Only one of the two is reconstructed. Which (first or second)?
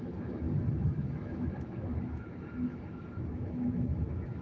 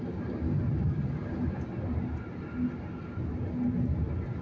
first